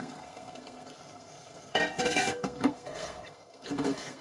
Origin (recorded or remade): remade